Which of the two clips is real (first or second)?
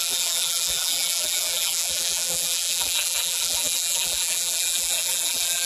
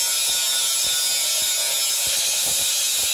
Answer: second